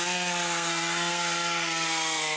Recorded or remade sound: remade